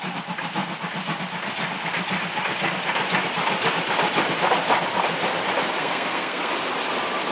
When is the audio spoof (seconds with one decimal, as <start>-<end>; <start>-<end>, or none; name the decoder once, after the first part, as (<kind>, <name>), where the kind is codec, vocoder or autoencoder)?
5.8-6.5 (codec, SNAC)